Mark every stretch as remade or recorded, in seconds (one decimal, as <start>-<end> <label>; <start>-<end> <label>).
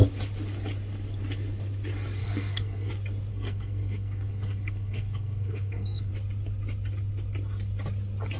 0.0-2.2 recorded; 2.2-2.9 remade; 2.9-3.3 recorded; 3.3-6.1 remade; 6.1-8.4 recorded